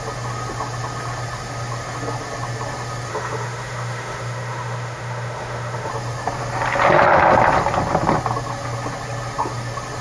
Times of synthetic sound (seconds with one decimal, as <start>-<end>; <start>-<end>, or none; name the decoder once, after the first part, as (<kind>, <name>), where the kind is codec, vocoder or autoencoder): 3.1-5.9 (autoencoder, DAC-VAE)